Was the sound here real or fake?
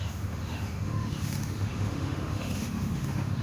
fake